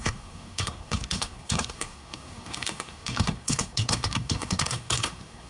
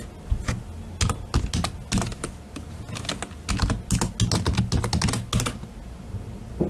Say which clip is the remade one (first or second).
first